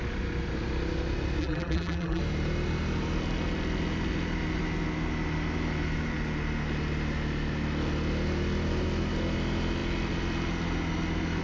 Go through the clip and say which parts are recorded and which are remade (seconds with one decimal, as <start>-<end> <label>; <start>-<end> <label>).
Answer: 0.0-1.4 recorded; 1.4-2.2 remade; 2.2-11.4 recorded